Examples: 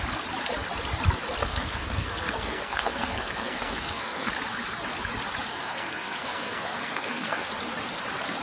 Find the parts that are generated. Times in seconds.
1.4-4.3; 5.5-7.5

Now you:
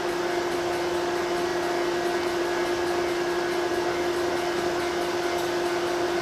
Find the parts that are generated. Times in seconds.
none

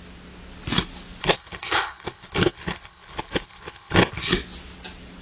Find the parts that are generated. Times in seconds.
1.2-4.3